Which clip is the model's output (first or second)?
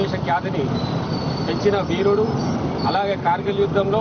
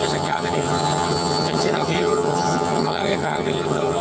second